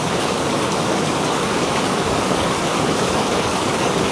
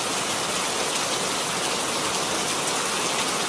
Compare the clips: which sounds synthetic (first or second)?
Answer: first